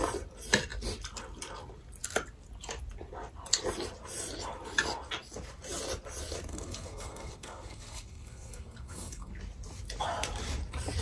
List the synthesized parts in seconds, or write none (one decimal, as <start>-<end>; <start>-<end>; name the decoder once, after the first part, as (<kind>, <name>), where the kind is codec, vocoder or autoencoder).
6.5-9.3 (codec, SNAC)